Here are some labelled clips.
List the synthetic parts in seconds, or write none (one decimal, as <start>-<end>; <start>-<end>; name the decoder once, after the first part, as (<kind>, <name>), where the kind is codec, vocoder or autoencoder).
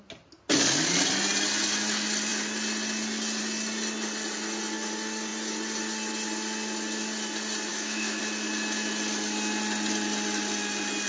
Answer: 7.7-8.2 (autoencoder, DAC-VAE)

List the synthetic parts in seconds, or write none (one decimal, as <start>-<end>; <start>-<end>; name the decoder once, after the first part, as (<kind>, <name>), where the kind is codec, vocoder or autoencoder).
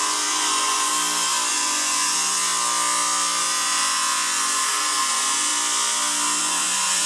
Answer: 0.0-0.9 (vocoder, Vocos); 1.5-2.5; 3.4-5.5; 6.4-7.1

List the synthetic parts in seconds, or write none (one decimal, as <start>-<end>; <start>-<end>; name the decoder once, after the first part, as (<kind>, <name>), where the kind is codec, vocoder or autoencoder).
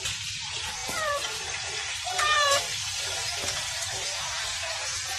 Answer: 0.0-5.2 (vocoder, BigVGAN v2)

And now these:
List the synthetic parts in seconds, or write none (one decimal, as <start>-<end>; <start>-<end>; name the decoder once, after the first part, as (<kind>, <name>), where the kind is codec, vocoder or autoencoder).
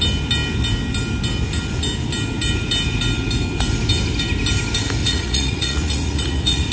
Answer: 5.0-6.7 (vocoder, Vocos)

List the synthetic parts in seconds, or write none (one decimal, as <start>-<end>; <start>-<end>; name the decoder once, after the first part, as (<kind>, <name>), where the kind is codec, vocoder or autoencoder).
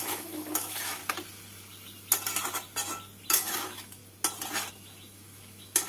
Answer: 0.0-1.0 (autoencoder, DAC-VAE); 3.3-4.0; 4.7-5.9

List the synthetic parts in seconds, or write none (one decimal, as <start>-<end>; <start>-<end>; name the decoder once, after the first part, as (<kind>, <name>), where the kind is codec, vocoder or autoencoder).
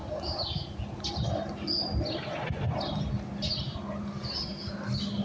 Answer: none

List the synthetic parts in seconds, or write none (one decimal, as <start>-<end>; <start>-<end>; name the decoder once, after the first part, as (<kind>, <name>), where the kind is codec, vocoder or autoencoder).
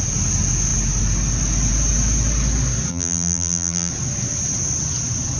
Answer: 2.9-3.9 (vocoder, BigVGAN v2)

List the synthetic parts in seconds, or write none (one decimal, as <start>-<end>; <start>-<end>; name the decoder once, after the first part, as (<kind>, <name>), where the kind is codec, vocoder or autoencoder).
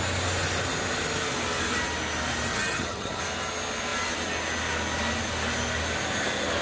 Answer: 2.5-3.2 (vocoder, HiFi-GAN)